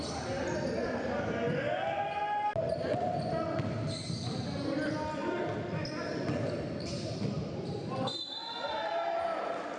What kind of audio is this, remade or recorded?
recorded